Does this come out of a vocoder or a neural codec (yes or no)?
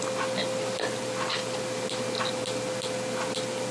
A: no